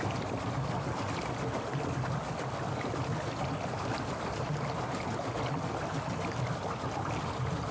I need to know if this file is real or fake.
real